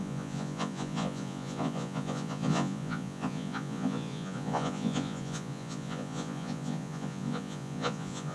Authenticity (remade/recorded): remade